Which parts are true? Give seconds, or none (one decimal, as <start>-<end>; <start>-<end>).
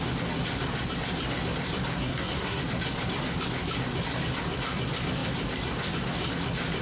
0.0-1.9; 2.6-6.8